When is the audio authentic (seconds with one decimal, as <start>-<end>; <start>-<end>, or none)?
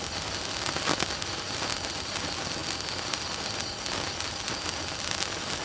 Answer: 0.0-5.6